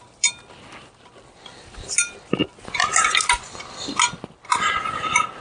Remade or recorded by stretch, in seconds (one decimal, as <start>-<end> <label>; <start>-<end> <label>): 0.0-5.4 recorded